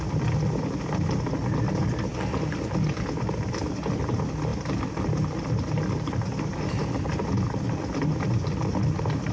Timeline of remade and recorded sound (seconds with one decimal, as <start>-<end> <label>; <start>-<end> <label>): 0.0-9.3 recorded